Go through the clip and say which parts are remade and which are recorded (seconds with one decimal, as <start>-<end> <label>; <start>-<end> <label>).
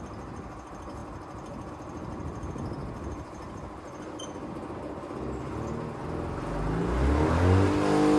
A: 0.0-8.2 recorded